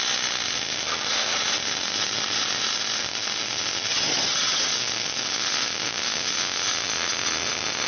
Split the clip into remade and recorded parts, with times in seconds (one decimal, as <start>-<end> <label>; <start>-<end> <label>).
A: 0.0-3.9 recorded; 3.9-4.7 remade; 4.7-7.9 recorded